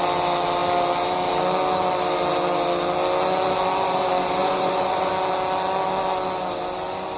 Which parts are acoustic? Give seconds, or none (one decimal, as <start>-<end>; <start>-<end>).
0.0-4.4; 5.1-7.2